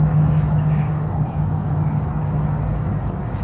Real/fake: fake